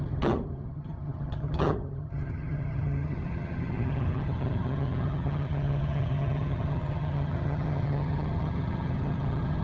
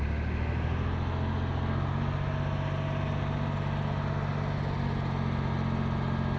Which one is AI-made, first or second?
first